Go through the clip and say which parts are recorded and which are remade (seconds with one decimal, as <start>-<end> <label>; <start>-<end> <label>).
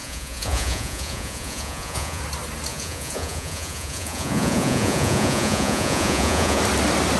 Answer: 0.0-2.2 remade; 2.2-2.7 recorded; 2.7-6.6 remade; 6.6-7.2 recorded